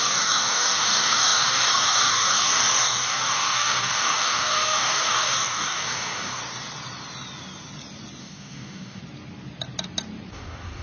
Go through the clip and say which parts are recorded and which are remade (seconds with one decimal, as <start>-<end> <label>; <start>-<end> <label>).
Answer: 0.0-6.4 remade; 6.4-8.2 recorded; 8.2-9.0 remade; 9.0-10.3 recorded; 10.3-10.8 remade